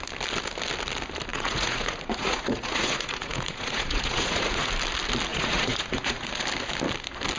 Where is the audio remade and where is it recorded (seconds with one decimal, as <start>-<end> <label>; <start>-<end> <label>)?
0.0-1.3 recorded; 1.3-4.7 remade; 4.7-5.3 recorded; 5.3-6.3 remade; 6.3-7.4 recorded